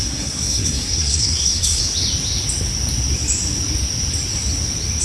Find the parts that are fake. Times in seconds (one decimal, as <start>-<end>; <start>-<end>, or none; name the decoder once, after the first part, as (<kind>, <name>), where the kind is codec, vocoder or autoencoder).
0.0-1.8 (codec, SNAC)